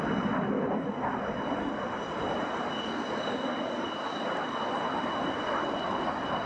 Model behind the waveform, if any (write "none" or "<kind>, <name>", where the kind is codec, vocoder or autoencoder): none